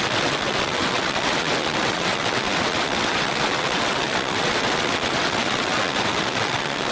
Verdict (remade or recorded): remade